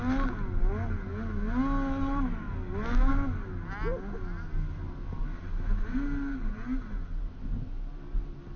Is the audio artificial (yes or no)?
no